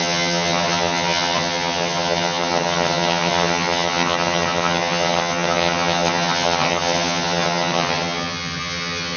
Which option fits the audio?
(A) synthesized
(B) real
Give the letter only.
A